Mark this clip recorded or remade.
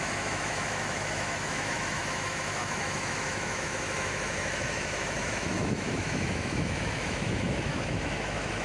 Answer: remade